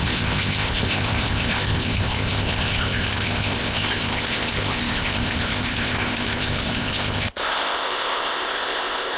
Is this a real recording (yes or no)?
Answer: no